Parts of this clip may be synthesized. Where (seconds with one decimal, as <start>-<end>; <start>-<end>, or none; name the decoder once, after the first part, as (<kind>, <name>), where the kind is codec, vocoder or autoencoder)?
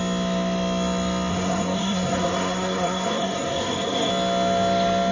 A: 1.3-4.1 (codec, SNAC)